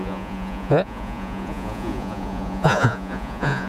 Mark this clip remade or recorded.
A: remade